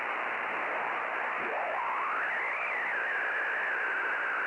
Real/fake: real